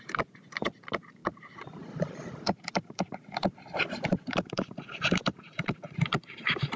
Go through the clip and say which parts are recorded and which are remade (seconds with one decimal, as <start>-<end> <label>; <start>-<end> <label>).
0.0-6.8 remade